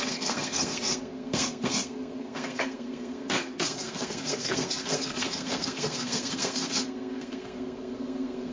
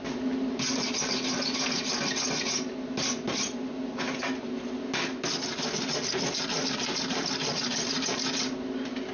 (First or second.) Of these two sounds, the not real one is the first